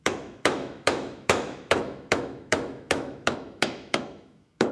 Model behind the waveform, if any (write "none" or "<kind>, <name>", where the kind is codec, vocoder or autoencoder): autoencoder, DAC-VAE